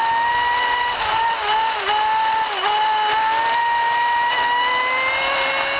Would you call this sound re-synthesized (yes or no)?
no